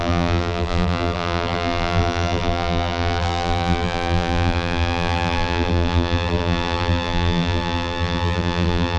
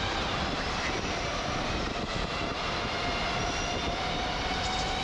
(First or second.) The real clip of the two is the second